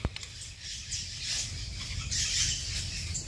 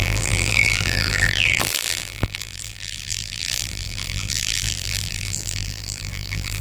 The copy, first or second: second